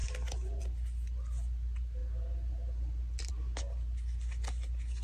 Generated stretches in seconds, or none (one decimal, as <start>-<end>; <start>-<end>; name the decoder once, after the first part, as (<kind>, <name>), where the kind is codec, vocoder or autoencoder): none